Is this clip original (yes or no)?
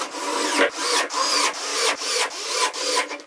yes